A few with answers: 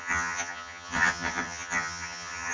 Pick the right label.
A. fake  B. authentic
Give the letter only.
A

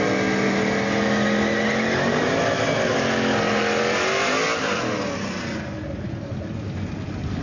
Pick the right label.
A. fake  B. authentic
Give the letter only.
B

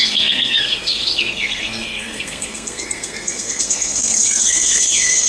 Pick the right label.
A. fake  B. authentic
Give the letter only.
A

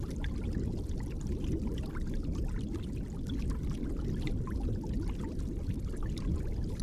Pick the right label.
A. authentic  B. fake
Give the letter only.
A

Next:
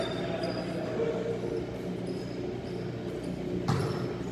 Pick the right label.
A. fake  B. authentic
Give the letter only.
B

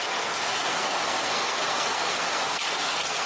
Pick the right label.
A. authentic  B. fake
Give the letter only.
B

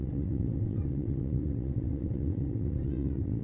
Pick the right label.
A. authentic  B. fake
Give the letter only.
B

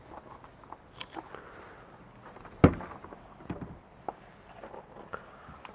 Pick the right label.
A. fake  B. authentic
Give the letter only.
B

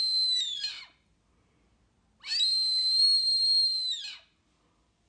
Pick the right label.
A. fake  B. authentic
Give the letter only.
B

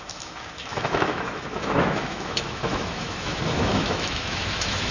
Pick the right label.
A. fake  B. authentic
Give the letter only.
A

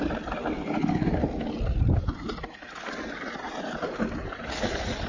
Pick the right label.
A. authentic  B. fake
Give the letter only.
A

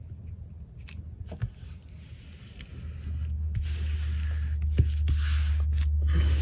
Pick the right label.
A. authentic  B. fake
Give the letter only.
A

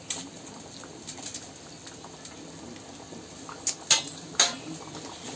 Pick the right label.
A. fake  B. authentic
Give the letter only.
B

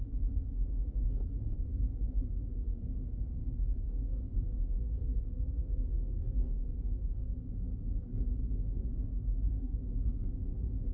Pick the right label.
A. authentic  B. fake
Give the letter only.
B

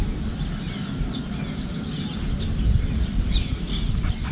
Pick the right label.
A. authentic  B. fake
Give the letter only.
A